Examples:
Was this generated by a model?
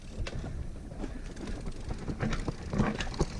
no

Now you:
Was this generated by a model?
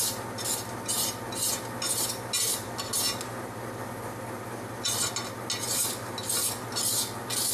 no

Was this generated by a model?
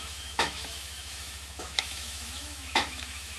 yes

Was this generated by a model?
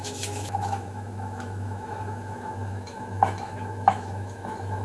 yes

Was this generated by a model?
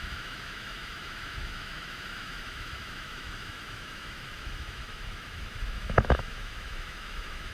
yes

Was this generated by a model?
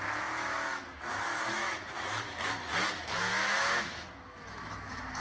yes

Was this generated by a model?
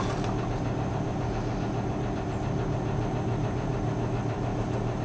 yes